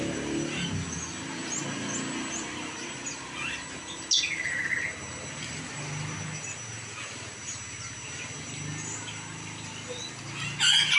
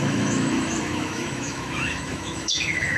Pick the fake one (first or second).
second